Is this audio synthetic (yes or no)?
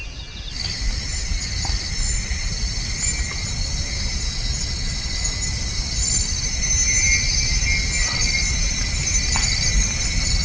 no